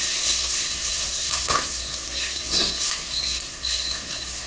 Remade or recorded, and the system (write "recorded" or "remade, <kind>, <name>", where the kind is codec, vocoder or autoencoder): remade, codec, SNAC